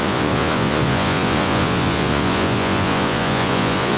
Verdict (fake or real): fake